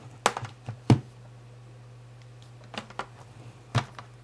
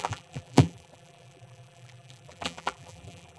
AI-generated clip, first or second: second